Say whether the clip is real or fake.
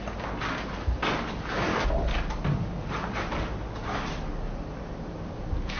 real